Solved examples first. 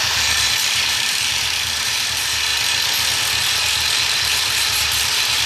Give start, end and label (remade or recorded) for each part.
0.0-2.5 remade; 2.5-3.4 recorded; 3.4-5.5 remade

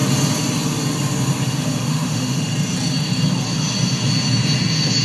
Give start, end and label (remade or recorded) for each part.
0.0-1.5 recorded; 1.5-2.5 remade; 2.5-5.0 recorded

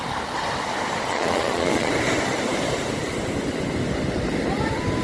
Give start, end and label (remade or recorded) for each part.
0.0-1.1 recorded; 1.1-1.9 remade; 1.9-5.0 recorded